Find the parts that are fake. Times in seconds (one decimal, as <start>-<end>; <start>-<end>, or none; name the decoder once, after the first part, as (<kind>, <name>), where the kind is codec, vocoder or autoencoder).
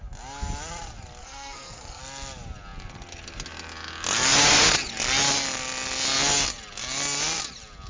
1.2-2.0 (codec, SNAC)